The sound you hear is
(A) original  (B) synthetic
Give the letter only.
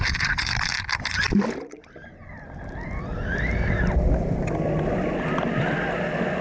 A